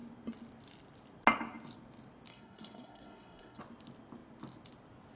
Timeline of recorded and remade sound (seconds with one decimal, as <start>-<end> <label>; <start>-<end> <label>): 0.0-2.3 recorded; 2.3-3.6 remade; 3.6-5.2 recorded